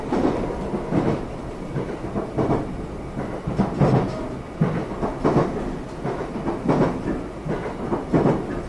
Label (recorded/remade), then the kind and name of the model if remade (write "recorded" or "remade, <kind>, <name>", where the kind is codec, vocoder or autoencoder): recorded